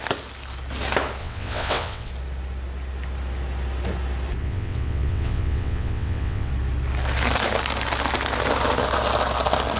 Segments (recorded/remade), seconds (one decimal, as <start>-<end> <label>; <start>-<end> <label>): 0.0-1.2 recorded; 1.2-2.1 remade; 2.1-4.4 recorded; 4.4-6.5 remade; 6.5-9.8 recorded